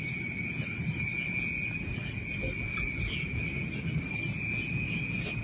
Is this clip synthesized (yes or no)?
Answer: no